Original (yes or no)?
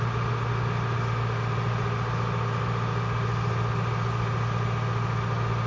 yes